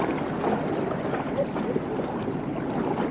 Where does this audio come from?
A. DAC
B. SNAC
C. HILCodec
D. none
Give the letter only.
D